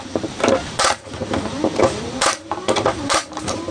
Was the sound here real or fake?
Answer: fake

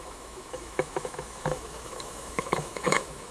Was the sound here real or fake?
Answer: fake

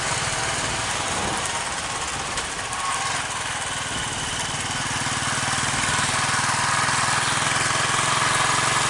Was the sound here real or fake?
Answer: real